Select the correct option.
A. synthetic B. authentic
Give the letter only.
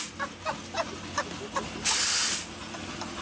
B